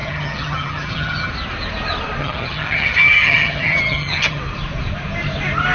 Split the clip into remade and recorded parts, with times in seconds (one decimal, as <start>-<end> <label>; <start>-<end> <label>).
0.0-1.3 remade; 1.3-2.2 recorded; 2.2-4.4 remade; 4.4-5.7 recorded